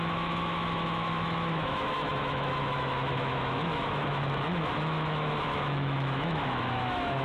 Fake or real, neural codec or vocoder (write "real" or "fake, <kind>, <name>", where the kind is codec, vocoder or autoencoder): fake, autoencoder, DAC-VAE